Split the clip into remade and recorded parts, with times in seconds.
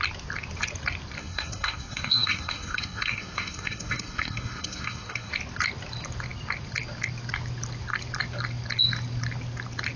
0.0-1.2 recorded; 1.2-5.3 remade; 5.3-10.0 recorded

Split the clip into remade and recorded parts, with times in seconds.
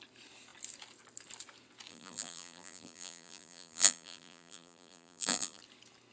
0.0-1.9 recorded; 1.9-5.6 remade; 5.6-6.1 recorded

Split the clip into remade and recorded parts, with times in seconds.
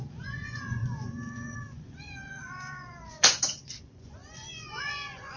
0.0-5.4 remade